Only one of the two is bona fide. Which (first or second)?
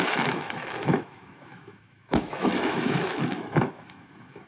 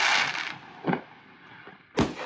second